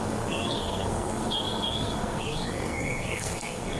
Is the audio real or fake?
fake